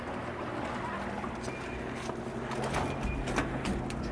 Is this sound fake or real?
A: real